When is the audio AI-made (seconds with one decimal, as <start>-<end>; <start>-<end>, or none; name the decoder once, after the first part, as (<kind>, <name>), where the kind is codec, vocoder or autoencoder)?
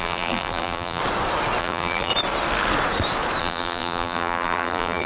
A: 0.0-1.0 (vocoder, BigVGAN v2); 1.6-2.1; 3.4-5.1